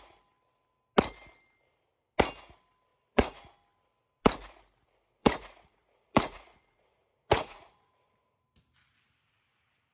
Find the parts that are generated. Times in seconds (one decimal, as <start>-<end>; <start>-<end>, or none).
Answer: 2.9-3.4; 5.2-8.4